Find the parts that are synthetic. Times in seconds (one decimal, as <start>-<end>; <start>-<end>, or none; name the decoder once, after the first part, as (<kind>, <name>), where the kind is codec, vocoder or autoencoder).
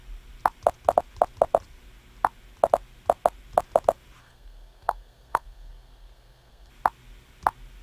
4.2-6.7 (codec, SNAC)